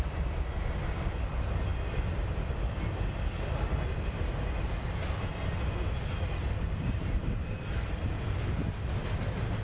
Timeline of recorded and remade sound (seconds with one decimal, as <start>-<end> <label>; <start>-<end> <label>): 0.0-9.6 recorded